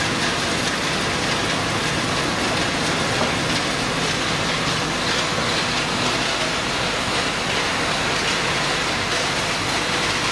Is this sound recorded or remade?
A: recorded